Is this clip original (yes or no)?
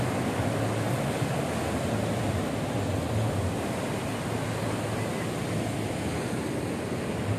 yes